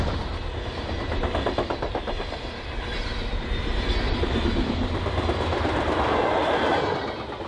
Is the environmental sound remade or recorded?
recorded